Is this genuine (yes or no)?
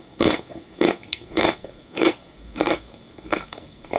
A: no